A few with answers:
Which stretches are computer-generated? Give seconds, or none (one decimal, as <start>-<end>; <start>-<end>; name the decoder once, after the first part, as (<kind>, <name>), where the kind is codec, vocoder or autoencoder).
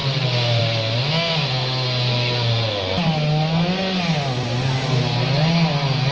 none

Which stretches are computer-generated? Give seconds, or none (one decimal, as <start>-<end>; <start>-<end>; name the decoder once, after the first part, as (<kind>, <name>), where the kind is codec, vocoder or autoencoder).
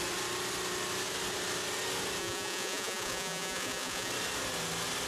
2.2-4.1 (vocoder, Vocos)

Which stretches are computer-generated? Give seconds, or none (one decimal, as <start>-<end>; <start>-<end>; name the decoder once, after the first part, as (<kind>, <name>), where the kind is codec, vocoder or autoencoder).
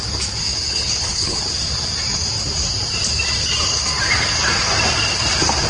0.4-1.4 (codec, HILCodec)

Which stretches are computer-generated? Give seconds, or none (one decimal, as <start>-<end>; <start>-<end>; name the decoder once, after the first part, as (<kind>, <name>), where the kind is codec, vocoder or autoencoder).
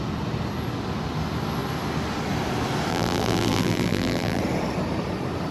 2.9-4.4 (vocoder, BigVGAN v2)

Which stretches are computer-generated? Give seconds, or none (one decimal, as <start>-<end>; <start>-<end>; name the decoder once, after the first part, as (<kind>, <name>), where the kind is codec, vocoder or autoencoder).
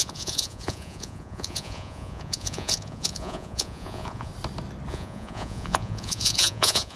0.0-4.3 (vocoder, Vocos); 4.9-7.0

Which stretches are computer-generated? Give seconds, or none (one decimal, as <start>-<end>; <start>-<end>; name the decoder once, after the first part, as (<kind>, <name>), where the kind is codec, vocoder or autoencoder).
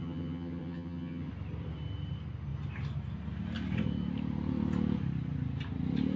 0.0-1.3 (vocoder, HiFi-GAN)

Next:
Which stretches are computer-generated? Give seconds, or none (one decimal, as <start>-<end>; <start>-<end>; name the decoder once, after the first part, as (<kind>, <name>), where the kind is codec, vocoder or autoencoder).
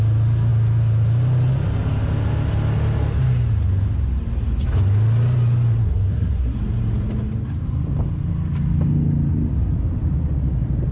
5.8-6.6 (codec, SNAC)